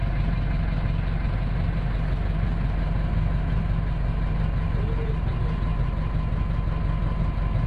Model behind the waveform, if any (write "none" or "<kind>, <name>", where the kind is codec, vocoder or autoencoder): none